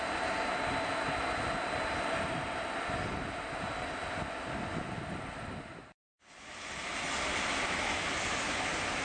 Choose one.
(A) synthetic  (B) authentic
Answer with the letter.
B